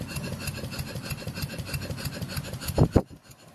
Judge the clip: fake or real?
real